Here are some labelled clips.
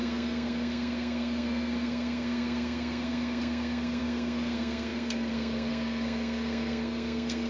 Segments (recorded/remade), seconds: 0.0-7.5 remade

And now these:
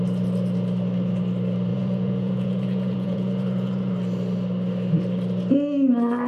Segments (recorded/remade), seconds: 0.0-1.7 recorded; 1.7-3.9 remade; 3.9-6.3 recorded

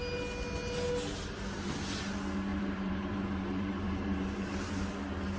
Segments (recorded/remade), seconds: 0.0-2.5 recorded; 2.5-4.8 remade; 4.8-5.4 recorded

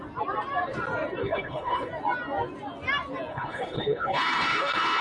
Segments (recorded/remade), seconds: 0.0-1.2 recorded; 1.2-1.9 remade; 1.9-3.3 recorded; 3.3-5.0 remade

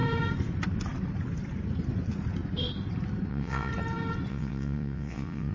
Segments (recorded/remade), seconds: 0.0-3.3 recorded; 3.3-3.7 remade; 3.7-4.3 recorded; 4.3-5.5 remade

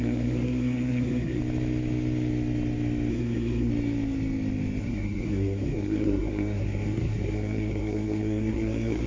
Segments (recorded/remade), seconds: 0.0-1.4 remade; 1.4-3.1 recorded; 3.1-3.7 remade; 3.7-4.8 recorded; 4.8-9.1 remade

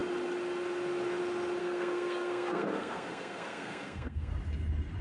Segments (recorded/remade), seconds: 0.0-1.6 recorded; 1.6-4.3 remade; 4.3-5.0 recorded